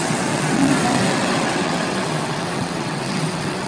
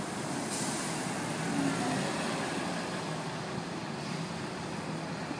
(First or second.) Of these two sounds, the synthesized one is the first